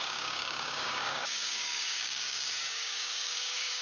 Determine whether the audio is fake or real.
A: fake